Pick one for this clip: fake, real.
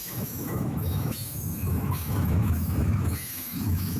fake